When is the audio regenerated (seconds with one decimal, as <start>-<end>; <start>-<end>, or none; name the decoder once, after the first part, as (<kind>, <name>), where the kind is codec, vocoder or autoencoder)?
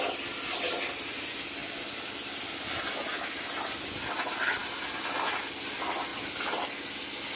none